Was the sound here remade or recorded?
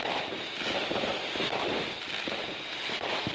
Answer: recorded